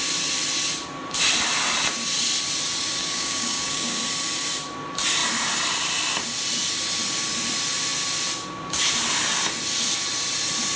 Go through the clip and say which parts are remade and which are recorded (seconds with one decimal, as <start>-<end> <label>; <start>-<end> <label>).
0.0-3.0 recorded; 3.0-4.0 remade; 4.0-10.8 recorded